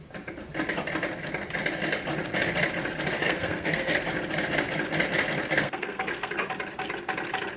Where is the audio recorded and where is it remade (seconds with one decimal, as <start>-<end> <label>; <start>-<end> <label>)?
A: 0.0-3.2 recorded; 3.2-4.0 remade; 4.0-5.6 recorded; 5.6-6.3 remade; 6.3-7.6 recorded